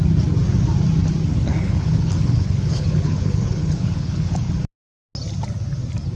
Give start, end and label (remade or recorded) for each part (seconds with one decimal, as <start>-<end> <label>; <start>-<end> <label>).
0.0-1.3 recorded; 1.3-4.5 remade; 4.5-6.2 recorded